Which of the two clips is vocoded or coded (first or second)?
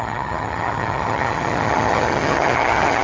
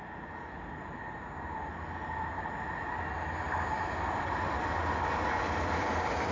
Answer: first